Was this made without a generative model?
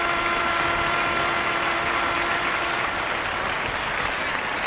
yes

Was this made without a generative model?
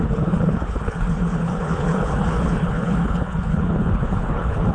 no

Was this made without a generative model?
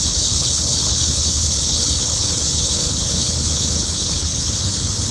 no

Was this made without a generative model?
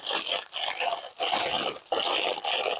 yes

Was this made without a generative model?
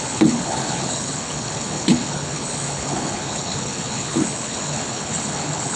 no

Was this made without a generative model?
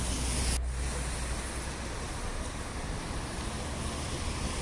yes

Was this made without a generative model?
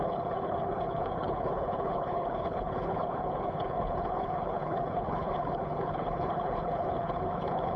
no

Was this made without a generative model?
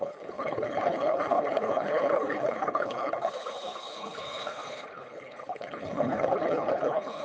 no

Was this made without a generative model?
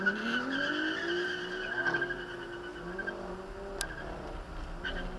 yes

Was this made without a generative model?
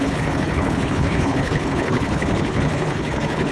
no